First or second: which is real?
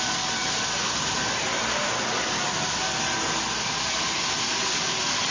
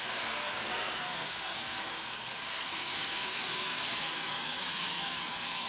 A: first